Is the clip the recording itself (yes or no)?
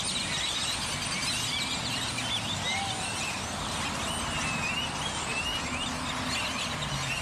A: yes